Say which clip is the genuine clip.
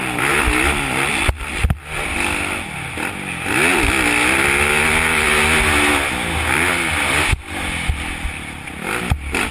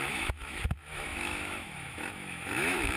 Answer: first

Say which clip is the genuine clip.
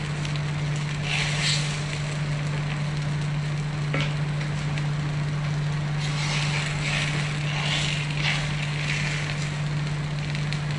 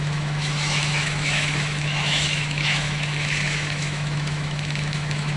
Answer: first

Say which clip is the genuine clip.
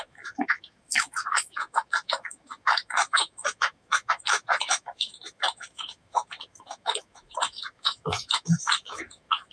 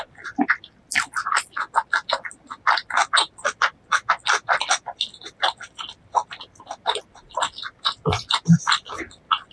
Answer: second